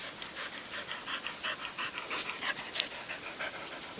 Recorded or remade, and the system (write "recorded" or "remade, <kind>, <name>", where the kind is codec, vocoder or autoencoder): recorded